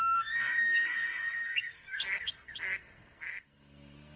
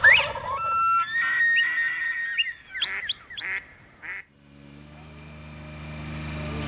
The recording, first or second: second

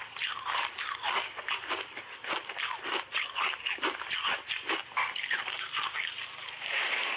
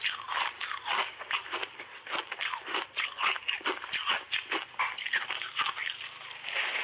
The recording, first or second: second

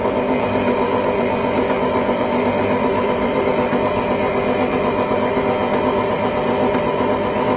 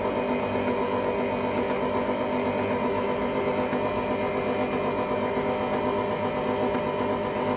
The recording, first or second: second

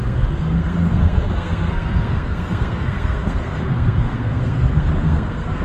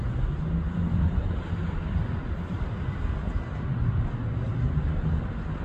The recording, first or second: second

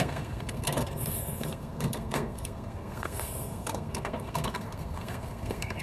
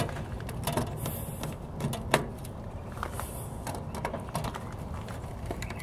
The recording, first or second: second